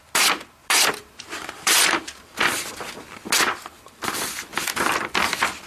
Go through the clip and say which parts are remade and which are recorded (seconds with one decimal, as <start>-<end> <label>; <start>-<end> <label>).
0.0-1.0 recorded; 1.0-2.0 remade; 2.0-5.7 recorded